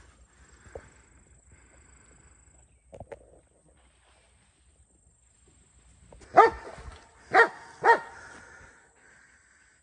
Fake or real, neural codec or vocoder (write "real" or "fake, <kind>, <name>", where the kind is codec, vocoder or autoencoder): real